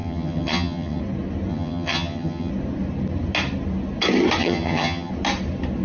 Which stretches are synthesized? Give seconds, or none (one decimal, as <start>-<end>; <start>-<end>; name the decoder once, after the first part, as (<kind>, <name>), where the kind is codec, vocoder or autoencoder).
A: 0.0-1.0 (vocoder, HiFi-GAN); 1.5-2.5; 4.4-5.1